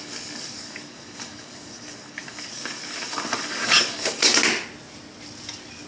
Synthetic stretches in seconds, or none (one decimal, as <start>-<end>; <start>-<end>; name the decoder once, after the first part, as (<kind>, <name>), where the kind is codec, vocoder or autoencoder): 0.0-4.3 (codec, DAC)